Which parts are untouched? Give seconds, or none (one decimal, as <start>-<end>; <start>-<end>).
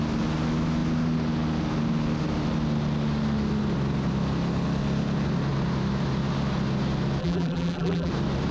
0.0-7.2; 8.1-8.5